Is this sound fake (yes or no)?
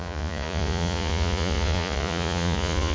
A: yes